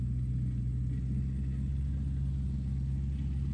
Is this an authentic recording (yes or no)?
yes